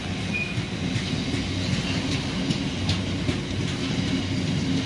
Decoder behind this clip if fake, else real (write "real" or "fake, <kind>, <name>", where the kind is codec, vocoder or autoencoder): real